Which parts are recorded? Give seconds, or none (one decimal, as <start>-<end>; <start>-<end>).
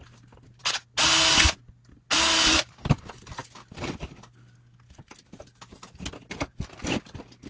0.0-7.5